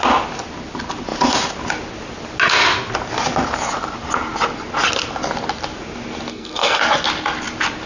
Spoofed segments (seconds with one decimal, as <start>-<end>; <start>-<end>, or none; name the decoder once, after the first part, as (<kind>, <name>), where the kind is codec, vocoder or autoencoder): 6.3-6.8 (codec, SNAC)